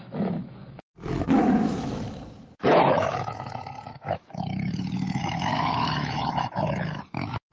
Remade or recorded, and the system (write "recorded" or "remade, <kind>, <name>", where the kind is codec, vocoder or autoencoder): remade, autoencoder, DAC-VAE